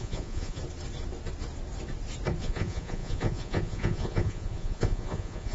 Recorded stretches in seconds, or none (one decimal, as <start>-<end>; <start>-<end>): 0.6-2.4